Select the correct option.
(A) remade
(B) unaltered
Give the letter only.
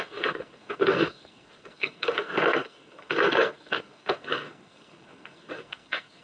A